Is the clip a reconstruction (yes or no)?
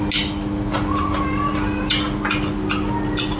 no